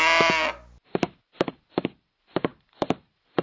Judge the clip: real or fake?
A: real